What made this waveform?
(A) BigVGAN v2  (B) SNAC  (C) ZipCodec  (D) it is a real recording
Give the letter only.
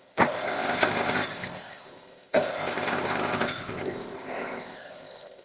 C